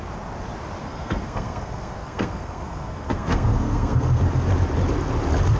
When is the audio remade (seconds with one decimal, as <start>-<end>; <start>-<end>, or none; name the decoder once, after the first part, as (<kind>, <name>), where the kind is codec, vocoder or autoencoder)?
0.8-4.2 (codec, SNAC)

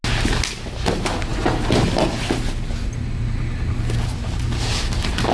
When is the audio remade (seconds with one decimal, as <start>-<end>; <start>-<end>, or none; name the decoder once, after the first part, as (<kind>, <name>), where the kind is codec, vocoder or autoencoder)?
none

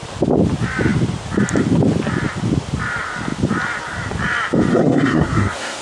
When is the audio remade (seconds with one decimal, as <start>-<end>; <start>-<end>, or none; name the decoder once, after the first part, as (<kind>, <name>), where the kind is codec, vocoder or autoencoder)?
4.7-5.8 (codec, SNAC)

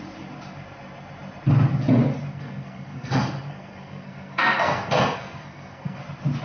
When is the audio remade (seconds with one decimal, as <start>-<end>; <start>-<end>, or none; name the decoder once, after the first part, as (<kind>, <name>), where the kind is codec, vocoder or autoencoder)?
2.3-6.0 (codec, SNAC)

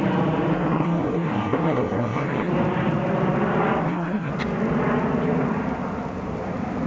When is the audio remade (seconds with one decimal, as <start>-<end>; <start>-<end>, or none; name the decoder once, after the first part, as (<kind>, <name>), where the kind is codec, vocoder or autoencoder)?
0.5-2.5 (codec, SNAC); 3.8-4.3

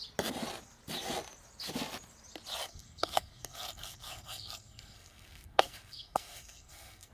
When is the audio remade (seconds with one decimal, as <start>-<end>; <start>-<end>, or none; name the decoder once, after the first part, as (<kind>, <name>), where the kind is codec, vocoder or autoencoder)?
2.6-7.1 (codec, SNAC)

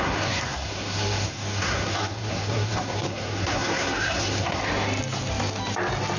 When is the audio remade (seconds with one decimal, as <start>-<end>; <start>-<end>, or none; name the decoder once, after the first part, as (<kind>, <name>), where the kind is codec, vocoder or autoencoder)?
0.0-4.6 (codec, SNAC)